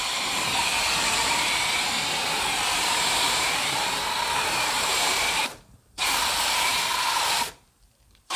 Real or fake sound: fake